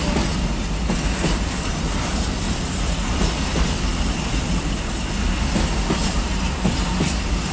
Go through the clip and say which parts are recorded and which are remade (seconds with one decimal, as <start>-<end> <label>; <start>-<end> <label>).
0.0-7.5 recorded